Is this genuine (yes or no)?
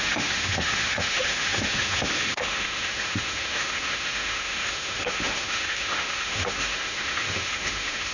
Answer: no